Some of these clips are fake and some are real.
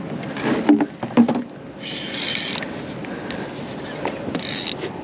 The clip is real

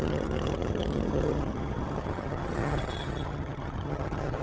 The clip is fake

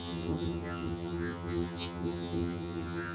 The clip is fake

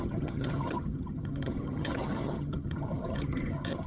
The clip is fake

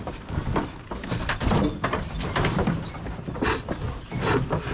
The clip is real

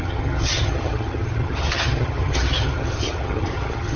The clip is fake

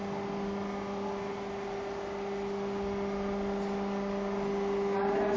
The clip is real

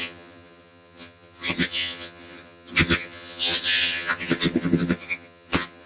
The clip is fake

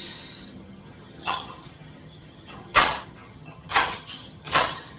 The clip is fake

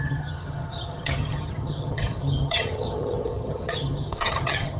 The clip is fake